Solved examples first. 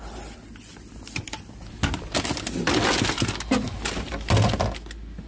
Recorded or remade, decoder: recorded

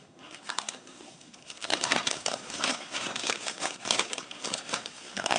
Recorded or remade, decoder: remade, codec, SNAC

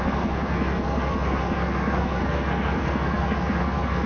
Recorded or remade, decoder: remade, codec, SNAC